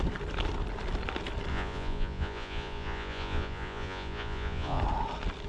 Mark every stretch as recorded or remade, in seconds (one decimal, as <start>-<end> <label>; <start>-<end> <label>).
0.0-1.5 recorded; 1.5-4.8 remade; 4.8-5.5 recorded